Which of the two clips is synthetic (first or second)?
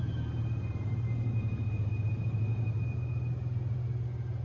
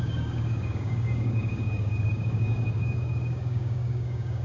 second